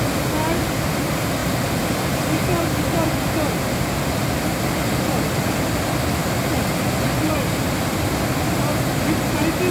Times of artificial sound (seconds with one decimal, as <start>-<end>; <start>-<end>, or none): none

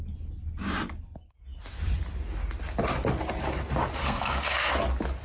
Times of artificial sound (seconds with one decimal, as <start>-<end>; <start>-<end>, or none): 4.0-4.7